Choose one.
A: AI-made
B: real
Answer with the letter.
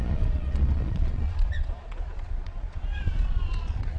A